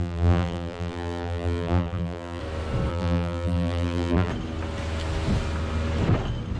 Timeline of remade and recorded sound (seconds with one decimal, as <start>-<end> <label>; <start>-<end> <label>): 0.0-2.4 remade; 2.4-2.9 recorded; 2.9-4.3 remade; 4.3-6.6 recorded